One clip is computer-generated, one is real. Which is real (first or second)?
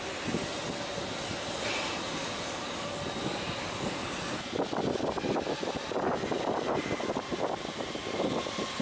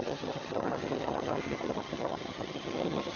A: first